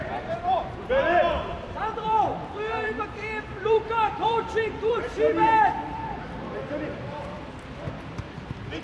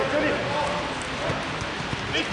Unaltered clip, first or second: second